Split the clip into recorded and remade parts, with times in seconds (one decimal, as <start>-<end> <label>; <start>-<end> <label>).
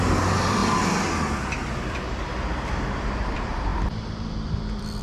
0.0-0.6 remade; 0.6-2.9 recorded; 2.9-5.0 remade